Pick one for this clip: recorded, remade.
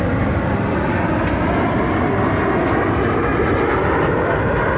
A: recorded